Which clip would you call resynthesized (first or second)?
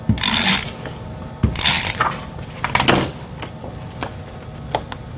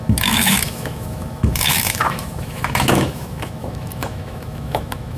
second